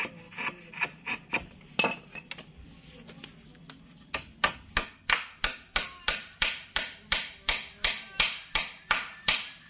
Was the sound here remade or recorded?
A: recorded